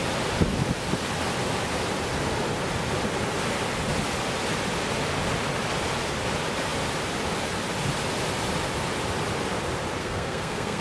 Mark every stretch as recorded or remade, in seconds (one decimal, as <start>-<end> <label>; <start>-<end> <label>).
0.0-10.0 recorded; 10.0-10.8 remade